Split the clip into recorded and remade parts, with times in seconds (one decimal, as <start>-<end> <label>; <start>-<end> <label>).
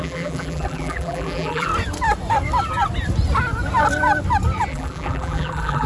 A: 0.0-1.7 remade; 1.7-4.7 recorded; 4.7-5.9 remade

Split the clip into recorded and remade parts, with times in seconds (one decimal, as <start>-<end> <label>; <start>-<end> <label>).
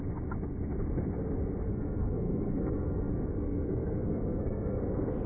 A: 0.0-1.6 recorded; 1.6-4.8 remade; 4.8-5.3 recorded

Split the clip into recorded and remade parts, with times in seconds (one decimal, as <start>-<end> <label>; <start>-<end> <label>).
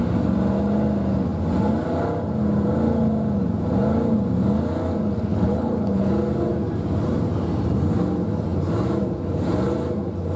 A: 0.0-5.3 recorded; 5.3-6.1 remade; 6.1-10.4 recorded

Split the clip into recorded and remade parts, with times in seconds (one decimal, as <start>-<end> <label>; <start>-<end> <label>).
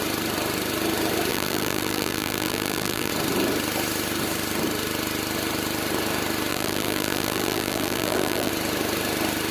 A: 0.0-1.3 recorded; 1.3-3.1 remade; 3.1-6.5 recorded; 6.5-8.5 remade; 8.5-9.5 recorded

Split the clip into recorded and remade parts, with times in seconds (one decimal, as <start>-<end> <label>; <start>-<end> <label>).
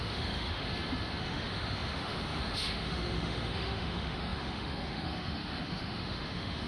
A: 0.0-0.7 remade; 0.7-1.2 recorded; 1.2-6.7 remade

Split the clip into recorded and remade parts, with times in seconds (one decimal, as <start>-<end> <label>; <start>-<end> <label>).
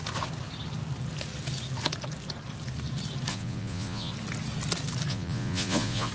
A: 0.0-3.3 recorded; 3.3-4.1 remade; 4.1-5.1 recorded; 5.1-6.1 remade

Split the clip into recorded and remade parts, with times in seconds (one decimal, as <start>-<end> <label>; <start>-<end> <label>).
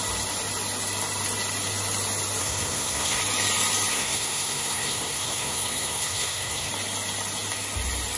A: 0.0-2.4 recorded; 2.4-3.2 remade; 3.2-3.9 recorded; 3.9-6.7 remade; 6.7-8.2 recorded